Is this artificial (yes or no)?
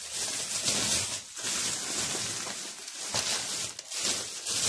no